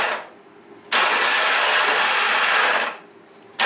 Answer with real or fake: real